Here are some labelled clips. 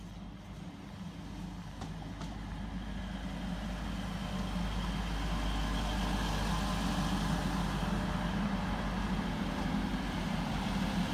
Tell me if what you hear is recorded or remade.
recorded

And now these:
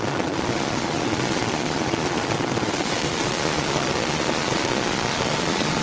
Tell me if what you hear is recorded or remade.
remade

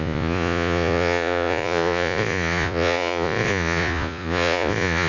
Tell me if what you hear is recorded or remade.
remade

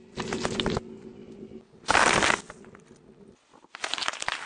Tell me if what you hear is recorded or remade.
recorded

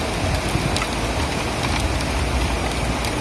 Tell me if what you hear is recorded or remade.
recorded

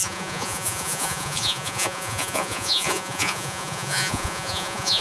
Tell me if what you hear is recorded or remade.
remade